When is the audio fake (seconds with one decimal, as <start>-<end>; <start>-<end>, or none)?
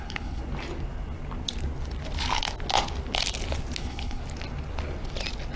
0.0-0.4; 3.8-4.2